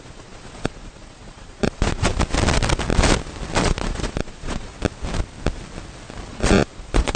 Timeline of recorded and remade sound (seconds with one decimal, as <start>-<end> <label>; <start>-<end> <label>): 0.0-2.1 remade; 2.1-3.6 recorded; 3.6-4.7 remade; 4.7-6.3 recorded; 6.3-7.2 remade